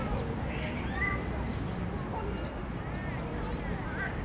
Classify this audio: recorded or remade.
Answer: recorded